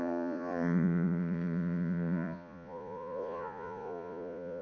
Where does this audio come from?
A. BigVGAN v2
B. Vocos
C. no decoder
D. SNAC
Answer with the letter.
B